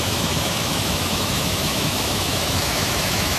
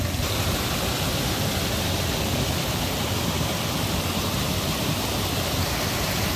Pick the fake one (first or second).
first